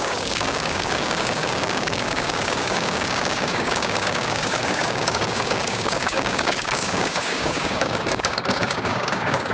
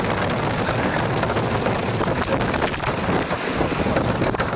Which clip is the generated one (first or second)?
first